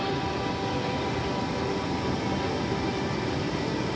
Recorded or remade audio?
recorded